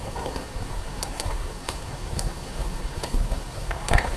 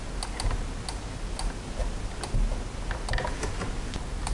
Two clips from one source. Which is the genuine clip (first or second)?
second